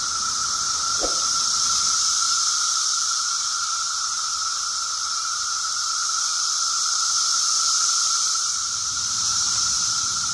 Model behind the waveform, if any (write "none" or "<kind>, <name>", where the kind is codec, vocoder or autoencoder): vocoder, BigVGAN v2